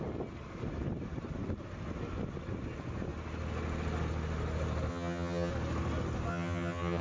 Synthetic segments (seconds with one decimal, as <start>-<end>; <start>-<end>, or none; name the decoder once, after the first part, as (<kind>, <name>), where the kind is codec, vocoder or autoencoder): 4.9-5.5 (vocoder, HiFi-GAN); 6.3-7.0